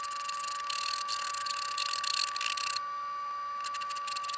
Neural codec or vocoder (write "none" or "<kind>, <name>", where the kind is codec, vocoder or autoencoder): none